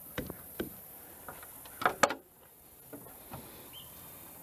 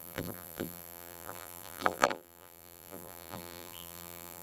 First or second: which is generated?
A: second